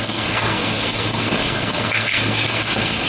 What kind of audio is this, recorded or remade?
remade